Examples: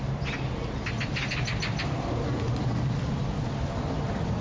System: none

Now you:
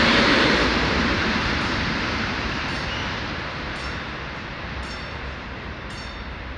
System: vocoder, BigVGAN v2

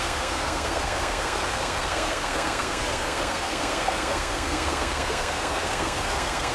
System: codec, SNAC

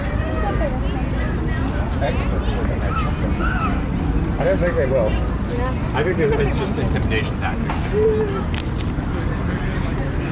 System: none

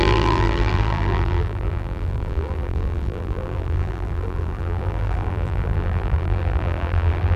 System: vocoder, BigVGAN v2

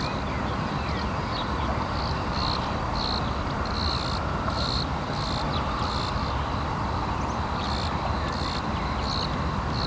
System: none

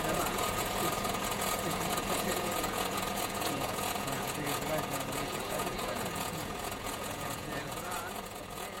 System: vocoder, Vocos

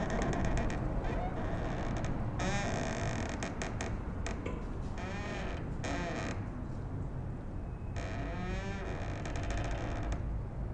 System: none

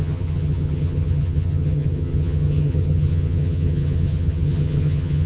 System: vocoder, HiFi-GAN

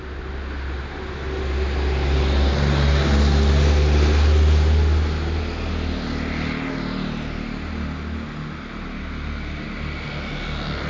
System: none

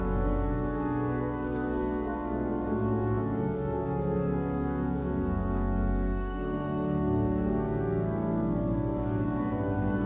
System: codec, DAC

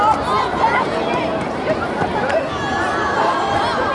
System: none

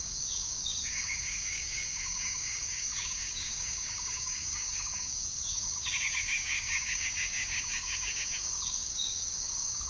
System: codec, DAC